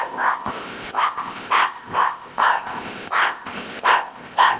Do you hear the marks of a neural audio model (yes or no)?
yes